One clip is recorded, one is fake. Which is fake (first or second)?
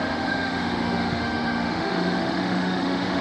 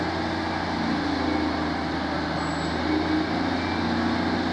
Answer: first